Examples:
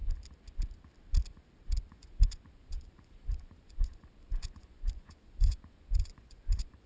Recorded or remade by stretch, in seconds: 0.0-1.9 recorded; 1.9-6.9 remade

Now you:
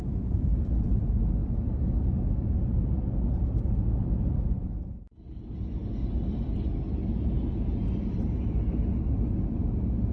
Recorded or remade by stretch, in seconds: 0.0-10.1 recorded

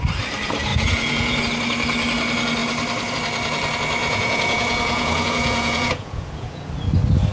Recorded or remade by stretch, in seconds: 0.0-0.7 recorded; 0.7-1.4 remade; 1.4-4.0 recorded; 4.0-6.7 remade; 6.7-7.3 recorded

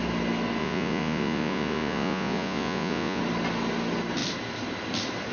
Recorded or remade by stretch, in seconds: 0.0-0.6 recorded; 0.6-3.2 remade; 3.2-5.3 recorded